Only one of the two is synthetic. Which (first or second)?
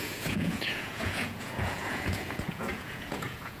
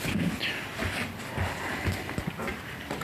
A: first